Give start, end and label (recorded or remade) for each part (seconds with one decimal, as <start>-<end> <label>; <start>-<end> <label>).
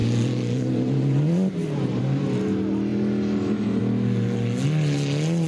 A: 0.0-5.5 recorded